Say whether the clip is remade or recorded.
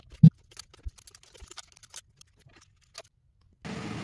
recorded